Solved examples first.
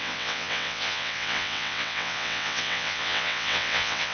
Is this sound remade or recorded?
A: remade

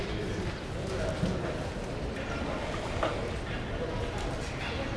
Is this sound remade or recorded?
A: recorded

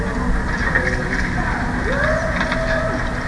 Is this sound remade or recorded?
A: recorded